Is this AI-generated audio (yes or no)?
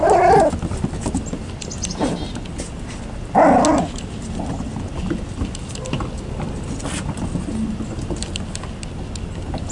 no